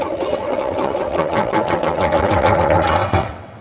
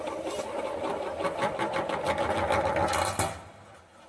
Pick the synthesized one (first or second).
first